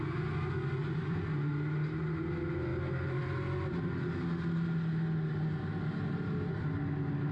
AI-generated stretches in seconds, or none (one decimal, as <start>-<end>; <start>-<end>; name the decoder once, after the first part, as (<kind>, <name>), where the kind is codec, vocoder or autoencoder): none

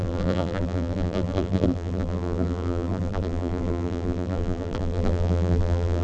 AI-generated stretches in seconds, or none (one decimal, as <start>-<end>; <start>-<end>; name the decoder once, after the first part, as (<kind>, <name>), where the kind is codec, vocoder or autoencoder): 0.0-6.0 (vocoder, BigVGAN v2)

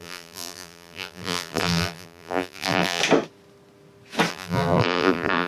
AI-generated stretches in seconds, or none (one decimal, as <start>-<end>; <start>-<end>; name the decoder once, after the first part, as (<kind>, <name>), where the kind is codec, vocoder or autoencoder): 0.0-3.0 (vocoder, BigVGAN v2); 4.3-5.5

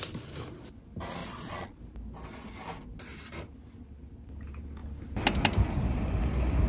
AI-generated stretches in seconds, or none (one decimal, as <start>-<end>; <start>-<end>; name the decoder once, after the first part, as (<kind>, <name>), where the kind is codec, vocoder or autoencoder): 1.2-1.8 (vocoder, Vocos)

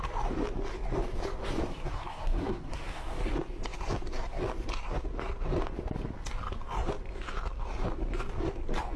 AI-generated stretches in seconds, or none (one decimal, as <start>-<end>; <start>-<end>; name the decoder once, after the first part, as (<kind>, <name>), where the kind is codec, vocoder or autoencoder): 1.6-3.2 (codec, SNAC)

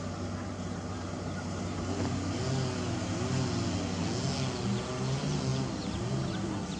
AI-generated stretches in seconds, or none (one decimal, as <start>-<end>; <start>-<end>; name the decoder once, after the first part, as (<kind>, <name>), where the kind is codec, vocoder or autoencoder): none